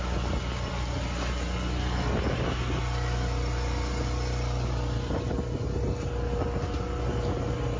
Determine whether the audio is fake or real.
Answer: real